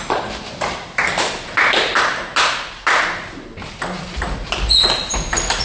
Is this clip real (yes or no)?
yes